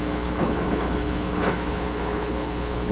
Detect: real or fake fake